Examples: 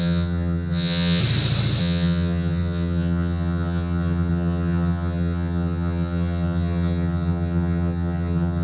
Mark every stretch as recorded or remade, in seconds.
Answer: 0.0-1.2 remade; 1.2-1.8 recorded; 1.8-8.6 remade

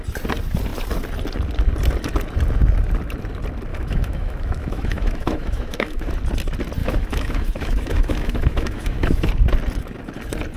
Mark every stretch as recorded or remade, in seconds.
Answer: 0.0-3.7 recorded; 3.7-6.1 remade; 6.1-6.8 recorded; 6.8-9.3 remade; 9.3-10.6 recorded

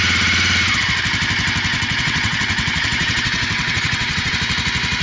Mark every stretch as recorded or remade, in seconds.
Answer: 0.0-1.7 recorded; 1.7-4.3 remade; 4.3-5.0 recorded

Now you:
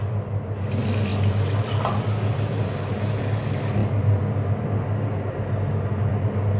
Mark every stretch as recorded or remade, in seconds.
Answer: 0.0-6.6 recorded